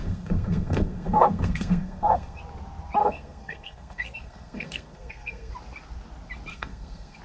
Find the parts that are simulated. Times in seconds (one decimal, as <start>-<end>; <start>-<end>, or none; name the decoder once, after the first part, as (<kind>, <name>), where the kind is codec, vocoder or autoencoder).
0.0-2.4 (codec, SNAC); 3.0-5.5; 6.5-7.2

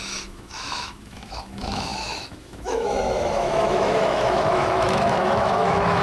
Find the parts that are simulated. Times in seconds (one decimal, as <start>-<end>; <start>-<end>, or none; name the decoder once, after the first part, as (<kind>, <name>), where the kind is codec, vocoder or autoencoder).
0.0-6.0 (autoencoder, DAC-VAE)

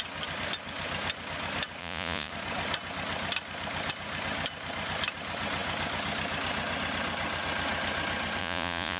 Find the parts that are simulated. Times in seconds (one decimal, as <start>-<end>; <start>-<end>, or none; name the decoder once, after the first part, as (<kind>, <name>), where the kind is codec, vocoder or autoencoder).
1.8-2.3 (vocoder, Vocos); 8.4-9.0

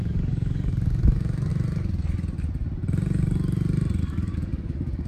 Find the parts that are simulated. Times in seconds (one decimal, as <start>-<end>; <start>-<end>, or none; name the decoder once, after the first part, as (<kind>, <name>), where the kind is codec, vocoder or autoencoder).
0.0-1.5 (codec, DAC); 4.0-5.1

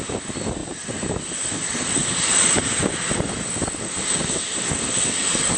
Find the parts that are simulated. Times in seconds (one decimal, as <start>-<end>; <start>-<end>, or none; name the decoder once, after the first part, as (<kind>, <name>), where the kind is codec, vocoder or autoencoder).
0.6-1.2 (vocoder, BigVGAN v2); 2.0-4.2

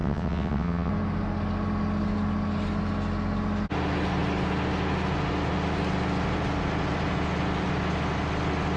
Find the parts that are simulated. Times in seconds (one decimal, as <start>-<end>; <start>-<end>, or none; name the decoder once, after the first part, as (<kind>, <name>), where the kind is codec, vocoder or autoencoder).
0.0-0.9 (vocoder, WaveNeXt)

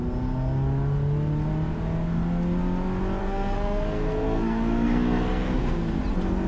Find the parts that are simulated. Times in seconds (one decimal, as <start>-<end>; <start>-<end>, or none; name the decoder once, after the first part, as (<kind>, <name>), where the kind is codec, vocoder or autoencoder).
3.2-6.0 (codec, SNAC)

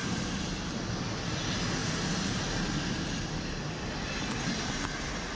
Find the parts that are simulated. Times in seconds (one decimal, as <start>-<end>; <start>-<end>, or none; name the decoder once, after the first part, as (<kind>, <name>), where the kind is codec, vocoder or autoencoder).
0.0-0.7 (vocoder, BigVGAN v2)